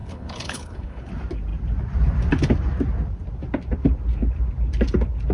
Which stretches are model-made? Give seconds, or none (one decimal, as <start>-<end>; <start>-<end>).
0.0-1.1